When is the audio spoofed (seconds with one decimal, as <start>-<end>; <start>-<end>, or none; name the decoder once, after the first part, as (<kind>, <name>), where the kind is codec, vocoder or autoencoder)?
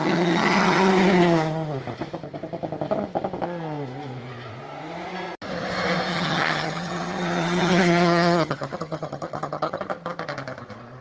0.0-0.9 (vocoder, HiFi-GAN); 6.1-9.8